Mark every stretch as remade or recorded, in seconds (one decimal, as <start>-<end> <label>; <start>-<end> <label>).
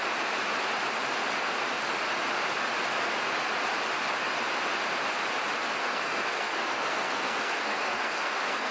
0.0-5.8 recorded; 5.8-8.7 remade